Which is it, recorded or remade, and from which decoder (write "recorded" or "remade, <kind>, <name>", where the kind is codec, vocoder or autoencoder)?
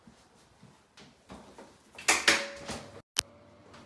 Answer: recorded